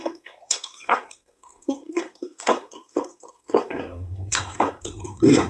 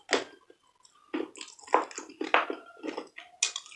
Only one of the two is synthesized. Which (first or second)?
first